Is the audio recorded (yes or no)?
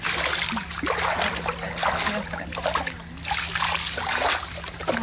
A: yes